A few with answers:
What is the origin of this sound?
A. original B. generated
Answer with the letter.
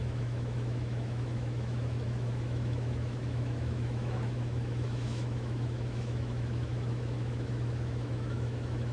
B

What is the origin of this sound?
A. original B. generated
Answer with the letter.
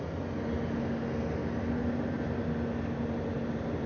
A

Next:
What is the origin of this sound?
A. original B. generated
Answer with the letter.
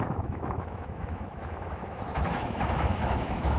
B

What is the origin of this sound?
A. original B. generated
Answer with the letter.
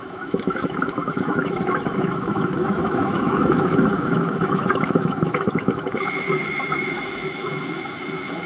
B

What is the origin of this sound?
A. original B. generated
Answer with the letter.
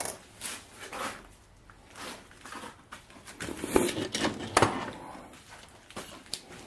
A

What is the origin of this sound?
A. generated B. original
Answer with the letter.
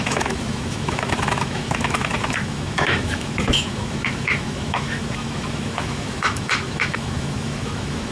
A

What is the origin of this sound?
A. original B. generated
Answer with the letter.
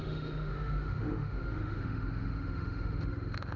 B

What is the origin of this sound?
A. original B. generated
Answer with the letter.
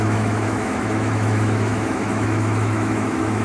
B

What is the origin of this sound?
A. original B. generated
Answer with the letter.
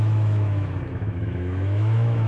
B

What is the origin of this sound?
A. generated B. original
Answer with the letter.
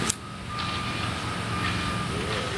B